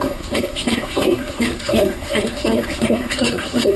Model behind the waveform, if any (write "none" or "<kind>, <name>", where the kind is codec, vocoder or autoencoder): codec, SNAC